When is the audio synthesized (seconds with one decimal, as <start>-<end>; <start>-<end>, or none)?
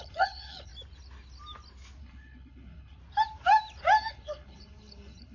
0.0-0.7; 2.0-3.0; 4.1-5.3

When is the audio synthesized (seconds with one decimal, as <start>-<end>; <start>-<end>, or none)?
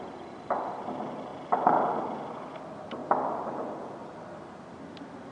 none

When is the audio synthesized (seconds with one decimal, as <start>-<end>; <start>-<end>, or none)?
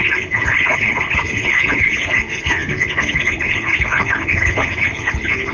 0.0-5.5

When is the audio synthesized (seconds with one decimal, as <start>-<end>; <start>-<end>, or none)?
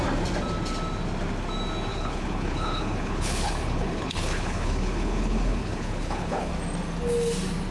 1.9-6.5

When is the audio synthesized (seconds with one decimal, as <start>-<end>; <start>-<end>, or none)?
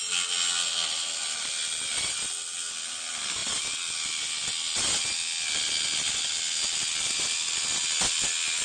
none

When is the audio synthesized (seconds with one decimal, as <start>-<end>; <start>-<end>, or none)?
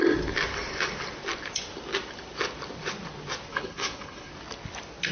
3.5-4.3